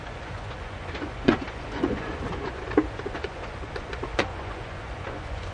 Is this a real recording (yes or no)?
no